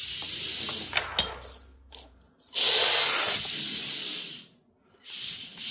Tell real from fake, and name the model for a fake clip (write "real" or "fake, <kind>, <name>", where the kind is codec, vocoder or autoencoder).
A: real